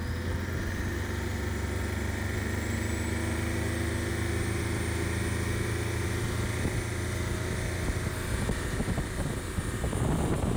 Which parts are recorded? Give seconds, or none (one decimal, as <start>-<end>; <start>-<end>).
0.0-10.6